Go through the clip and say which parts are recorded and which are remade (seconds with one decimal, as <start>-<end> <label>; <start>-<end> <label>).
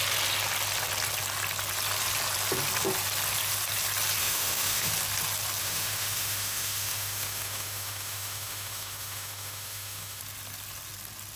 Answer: 0.0-4.2 recorded; 4.2-4.9 remade; 4.9-5.6 recorded; 5.6-10.2 remade; 10.2-11.4 recorded